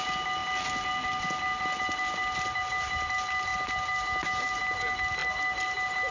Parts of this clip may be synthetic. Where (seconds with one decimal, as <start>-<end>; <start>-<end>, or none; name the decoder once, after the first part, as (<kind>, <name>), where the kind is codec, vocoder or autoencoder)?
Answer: none